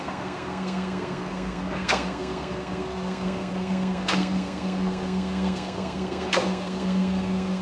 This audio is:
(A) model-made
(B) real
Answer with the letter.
A